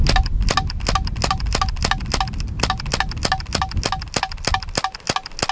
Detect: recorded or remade recorded